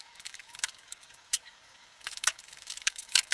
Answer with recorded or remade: remade